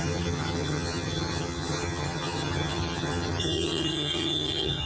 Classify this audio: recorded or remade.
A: remade